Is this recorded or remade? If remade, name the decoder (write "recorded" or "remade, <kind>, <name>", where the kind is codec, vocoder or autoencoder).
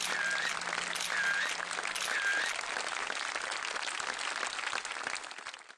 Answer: recorded